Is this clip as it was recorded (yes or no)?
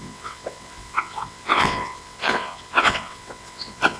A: no